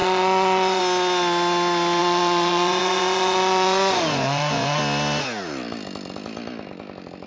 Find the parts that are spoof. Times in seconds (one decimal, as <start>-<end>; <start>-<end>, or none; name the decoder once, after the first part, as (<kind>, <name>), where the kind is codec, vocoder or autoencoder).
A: 0.0-0.8 (vocoder, Vocos); 2.0-4.8

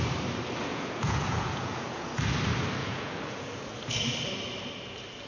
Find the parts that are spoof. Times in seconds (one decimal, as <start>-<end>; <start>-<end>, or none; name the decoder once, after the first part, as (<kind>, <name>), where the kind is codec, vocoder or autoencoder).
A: 0.7-2.2 (vocoder, Vocos); 2.8-3.6

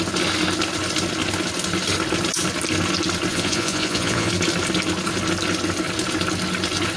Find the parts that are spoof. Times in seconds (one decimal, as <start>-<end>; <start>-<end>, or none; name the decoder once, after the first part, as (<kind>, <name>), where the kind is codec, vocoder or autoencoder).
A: 3.3-4.3 (vocoder, Vocos)